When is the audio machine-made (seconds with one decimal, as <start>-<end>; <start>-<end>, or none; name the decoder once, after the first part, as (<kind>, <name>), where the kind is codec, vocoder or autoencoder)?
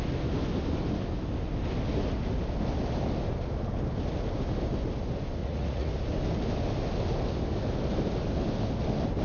5.4-5.9 (vocoder, Vocos)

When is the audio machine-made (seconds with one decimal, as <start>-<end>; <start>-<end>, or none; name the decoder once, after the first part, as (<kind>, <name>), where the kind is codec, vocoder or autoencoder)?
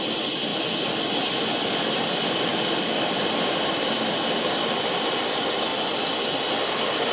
none